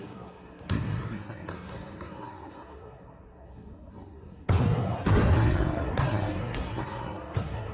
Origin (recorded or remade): remade